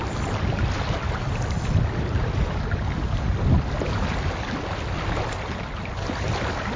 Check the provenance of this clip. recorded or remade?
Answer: recorded